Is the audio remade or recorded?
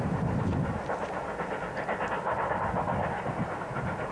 recorded